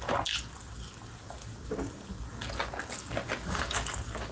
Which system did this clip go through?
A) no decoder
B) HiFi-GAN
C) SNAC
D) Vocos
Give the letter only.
A